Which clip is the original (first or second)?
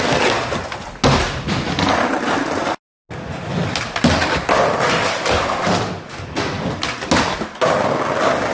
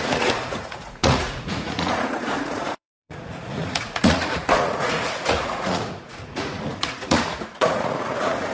first